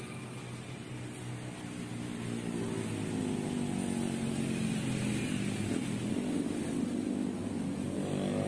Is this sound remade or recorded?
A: recorded